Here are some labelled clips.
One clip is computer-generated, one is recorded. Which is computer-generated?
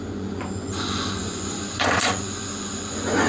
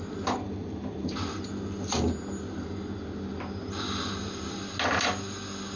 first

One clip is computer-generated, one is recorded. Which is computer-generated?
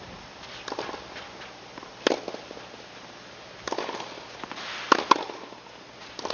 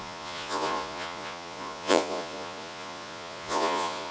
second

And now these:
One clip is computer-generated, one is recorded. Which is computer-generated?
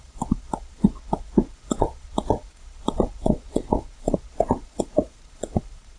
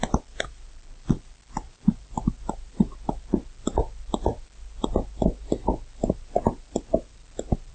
first